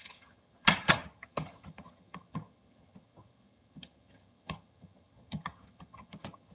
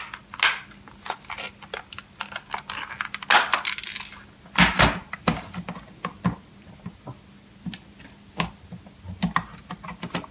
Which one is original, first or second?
second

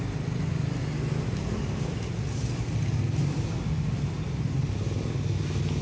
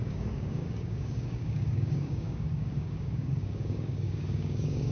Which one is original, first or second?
first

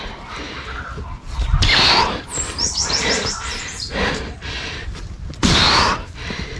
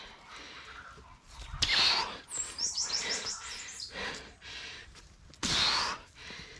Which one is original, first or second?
second